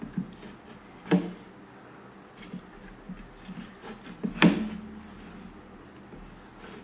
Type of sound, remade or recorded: recorded